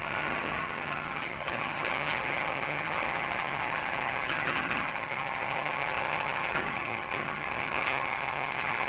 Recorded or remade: remade